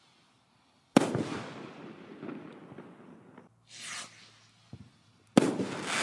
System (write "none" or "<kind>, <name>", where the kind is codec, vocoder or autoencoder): none